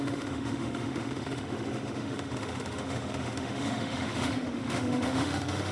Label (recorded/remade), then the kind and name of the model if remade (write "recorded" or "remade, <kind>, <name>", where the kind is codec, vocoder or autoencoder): remade, autoencoder, DAC-VAE